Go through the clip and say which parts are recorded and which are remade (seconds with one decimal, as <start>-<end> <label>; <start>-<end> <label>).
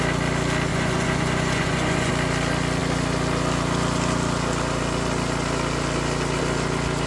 0.0-0.7 recorded; 0.7-2.1 remade; 2.1-7.1 recorded